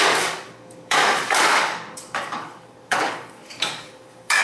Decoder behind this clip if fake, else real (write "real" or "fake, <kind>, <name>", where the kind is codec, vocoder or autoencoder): fake, codec, DAC